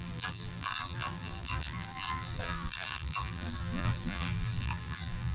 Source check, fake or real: fake